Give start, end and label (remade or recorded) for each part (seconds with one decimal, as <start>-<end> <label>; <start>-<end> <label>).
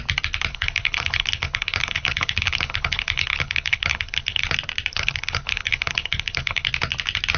0.0-0.5 recorded; 0.5-4.4 remade; 4.4-4.9 recorded; 4.9-6.7 remade; 6.7-7.4 recorded